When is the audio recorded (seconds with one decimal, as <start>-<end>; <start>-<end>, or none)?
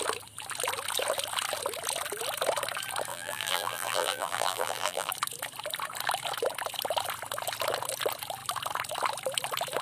0.0-3.1; 5.1-9.8